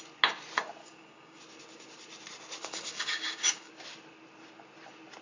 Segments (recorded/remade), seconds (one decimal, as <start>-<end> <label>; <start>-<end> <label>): 0.0-0.8 recorded; 0.8-1.4 remade; 1.4-2.6 recorded; 2.6-3.7 remade; 3.7-5.2 recorded